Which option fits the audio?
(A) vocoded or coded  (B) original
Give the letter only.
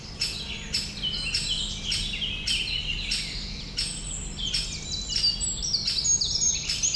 B